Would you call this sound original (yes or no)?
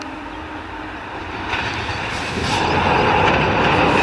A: yes